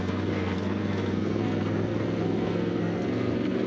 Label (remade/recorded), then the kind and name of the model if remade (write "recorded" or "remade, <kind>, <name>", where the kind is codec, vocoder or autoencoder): remade, codec, SNAC